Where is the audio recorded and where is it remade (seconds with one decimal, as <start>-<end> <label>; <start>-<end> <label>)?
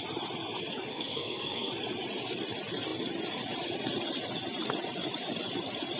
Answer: 0.0-0.9 recorded; 0.9-1.7 remade; 1.7-6.0 recorded